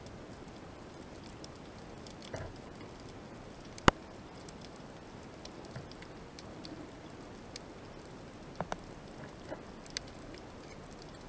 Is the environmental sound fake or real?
real